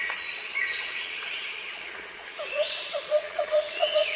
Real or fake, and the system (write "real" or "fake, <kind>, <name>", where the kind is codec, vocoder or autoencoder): fake, vocoder, Vocos